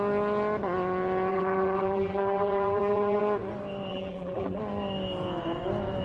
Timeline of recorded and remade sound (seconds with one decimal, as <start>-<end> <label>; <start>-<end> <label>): 0.0-1.3 recorded; 1.3-3.2 remade; 3.2-3.9 recorded; 3.9-4.6 remade; 4.6-6.0 recorded